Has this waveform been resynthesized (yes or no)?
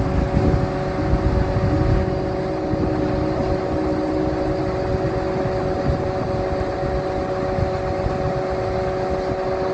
no